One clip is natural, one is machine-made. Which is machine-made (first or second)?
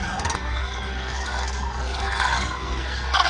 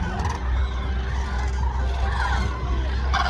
first